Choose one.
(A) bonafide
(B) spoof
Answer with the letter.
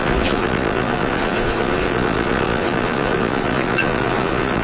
B